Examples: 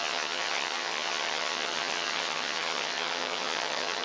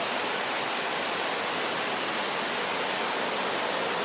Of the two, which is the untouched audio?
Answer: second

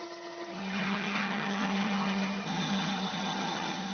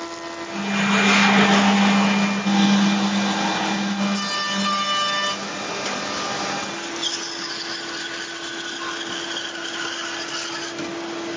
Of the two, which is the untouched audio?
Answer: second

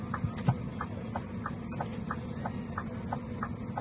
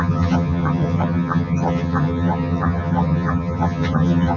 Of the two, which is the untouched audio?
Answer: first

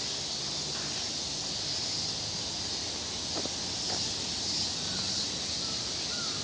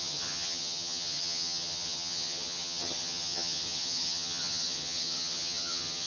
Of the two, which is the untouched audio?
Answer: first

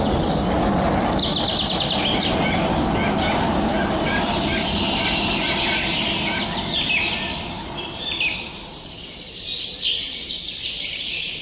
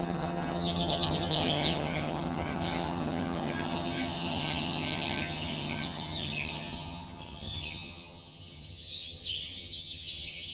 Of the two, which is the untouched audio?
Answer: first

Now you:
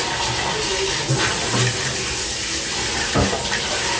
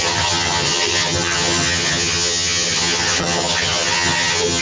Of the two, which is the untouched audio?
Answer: first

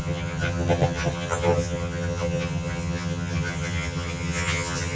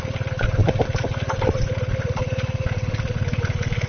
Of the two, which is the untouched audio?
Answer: second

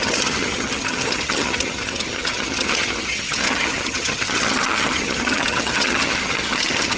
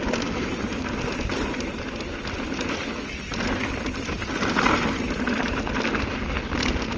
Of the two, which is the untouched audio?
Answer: second